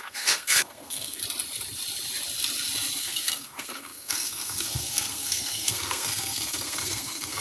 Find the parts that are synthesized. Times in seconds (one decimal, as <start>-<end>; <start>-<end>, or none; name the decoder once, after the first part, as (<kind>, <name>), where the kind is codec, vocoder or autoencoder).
0.0-1.2 (codec, SNAC); 3.0-7.4